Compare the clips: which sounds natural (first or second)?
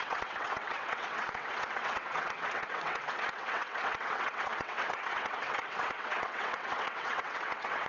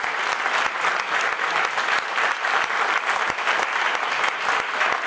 second